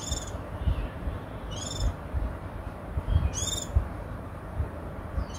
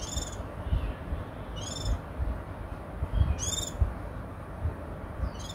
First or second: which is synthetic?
first